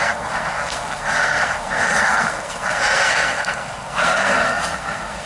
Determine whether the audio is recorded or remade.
remade